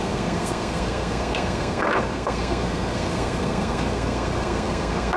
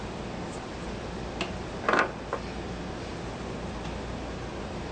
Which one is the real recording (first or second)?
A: second